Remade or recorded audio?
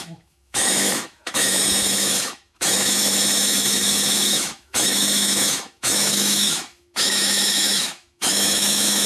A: remade